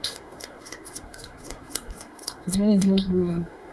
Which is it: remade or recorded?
remade